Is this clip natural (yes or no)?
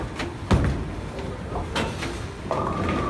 yes